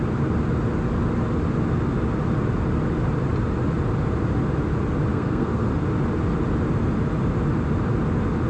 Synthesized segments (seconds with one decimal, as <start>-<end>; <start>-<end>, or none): 5.1-5.7